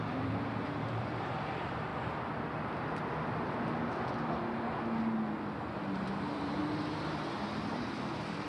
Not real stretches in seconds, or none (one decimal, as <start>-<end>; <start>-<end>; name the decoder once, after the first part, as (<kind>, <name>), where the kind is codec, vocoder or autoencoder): 0.0-1.9 (vocoder, BigVGAN v2); 5.9-6.6; 7.6-8.5

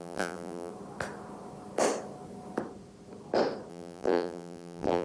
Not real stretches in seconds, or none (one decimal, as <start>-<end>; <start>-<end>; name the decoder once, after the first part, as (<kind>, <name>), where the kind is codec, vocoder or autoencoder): 0.0-0.7 (vocoder, BigVGAN v2); 3.7-5.0

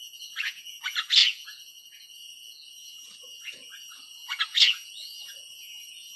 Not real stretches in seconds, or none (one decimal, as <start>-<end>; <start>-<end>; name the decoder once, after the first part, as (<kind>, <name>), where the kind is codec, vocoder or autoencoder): 0.0-6.2 (vocoder, Vocos)

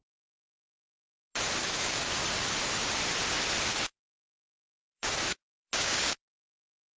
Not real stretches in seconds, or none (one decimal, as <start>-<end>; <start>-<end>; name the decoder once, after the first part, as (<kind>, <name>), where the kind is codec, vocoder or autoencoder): 1.6-2.1 (codec, DAC); 3.7-7.0